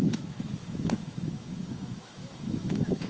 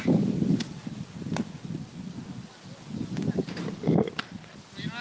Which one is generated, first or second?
first